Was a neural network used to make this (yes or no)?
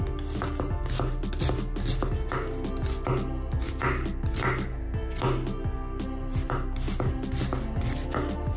no